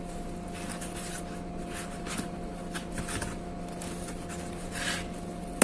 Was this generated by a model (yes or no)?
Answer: no